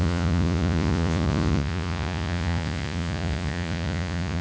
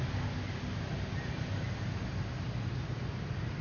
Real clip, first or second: second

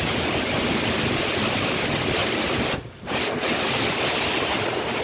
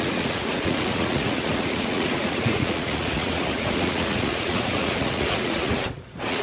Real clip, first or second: first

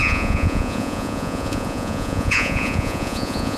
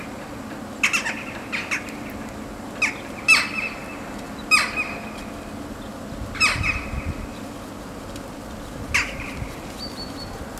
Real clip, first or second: second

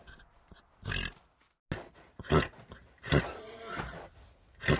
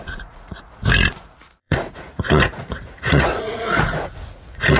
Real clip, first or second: first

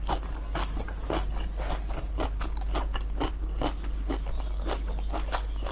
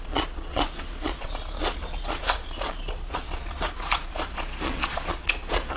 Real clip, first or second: first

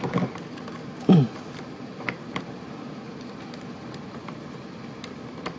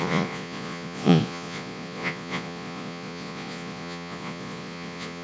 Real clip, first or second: first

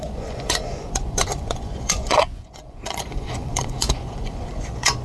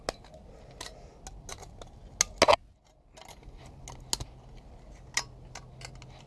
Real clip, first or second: second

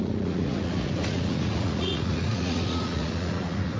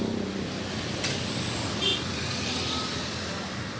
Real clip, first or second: second